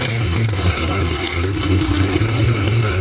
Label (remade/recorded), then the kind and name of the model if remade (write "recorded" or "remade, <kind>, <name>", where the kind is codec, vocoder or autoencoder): remade, codec, SNAC